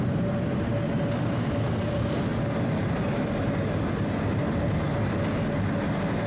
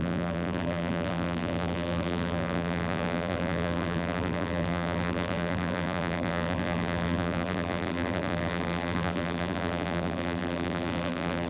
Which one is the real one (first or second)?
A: first